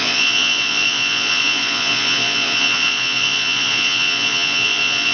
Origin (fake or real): fake